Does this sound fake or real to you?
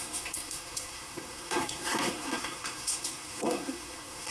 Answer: fake